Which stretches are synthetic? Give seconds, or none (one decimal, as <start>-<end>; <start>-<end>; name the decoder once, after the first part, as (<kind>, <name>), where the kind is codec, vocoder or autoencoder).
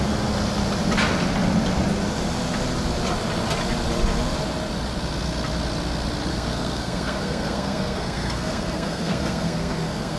6.3-10.2 (codec, SNAC)